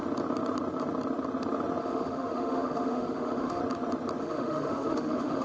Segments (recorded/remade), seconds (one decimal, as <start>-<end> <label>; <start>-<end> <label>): 0.0-1.8 recorded; 1.8-3.6 remade; 3.6-4.2 recorded; 4.2-5.4 remade